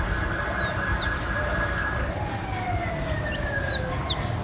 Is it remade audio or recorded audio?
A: recorded